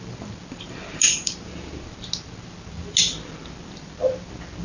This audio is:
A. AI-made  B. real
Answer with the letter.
B